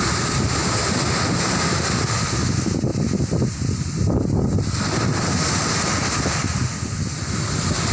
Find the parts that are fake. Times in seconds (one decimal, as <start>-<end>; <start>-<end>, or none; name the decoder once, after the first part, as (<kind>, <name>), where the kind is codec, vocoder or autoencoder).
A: none